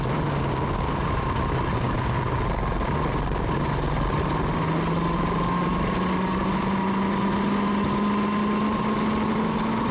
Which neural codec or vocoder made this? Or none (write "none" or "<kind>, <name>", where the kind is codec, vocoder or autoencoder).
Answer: none